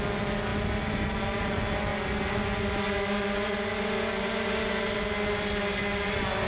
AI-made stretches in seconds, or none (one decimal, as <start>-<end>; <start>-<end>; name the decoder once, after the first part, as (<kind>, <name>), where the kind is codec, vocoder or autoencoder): none